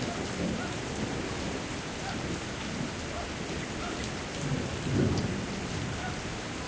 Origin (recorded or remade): recorded